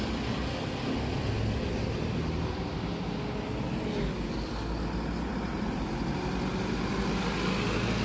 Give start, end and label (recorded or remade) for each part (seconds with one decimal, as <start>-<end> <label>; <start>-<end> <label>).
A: 0.0-8.0 recorded